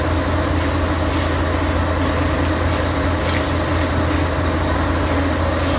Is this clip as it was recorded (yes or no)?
yes